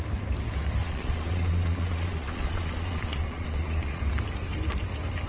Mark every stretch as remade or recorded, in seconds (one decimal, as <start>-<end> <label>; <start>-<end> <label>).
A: 0.0-0.8 recorded; 0.8-4.0 remade; 4.0-5.3 recorded